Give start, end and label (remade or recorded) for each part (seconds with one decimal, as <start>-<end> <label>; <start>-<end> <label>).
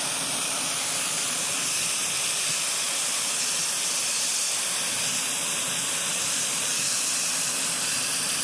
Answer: 0.0-2.0 remade; 2.0-4.5 recorded; 4.5-6.7 remade; 6.7-7.9 recorded; 7.9-8.4 remade